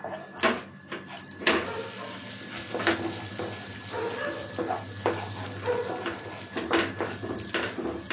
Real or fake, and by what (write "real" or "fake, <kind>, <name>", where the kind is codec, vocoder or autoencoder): real